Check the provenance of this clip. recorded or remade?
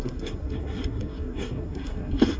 remade